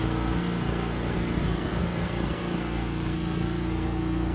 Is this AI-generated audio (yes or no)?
yes